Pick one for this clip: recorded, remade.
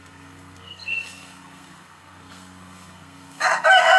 remade